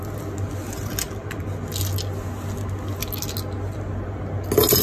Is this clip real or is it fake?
real